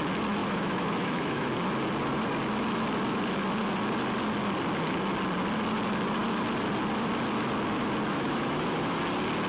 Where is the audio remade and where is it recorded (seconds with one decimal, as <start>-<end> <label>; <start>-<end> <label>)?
0.0-0.4 recorded; 0.4-1.5 remade; 1.5-8.1 recorded; 8.1-9.0 remade; 9.0-9.5 recorded

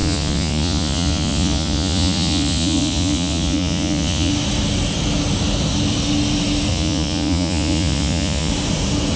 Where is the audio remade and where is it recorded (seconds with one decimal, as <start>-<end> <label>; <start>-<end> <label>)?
0.0-4.3 remade; 4.3-6.7 recorded; 6.7-8.5 remade; 8.5-9.2 recorded

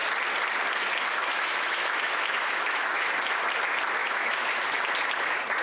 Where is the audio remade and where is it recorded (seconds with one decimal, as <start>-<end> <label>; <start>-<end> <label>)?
0.0-1.2 recorded; 1.2-3.1 remade; 3.1-4.0 recorded; 4.0-4.6 remade; 4.6-5.6 recorded